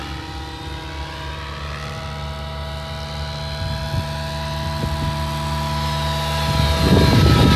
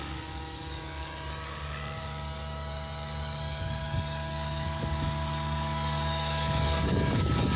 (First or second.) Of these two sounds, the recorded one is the first